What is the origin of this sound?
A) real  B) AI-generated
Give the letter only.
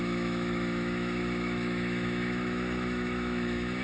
B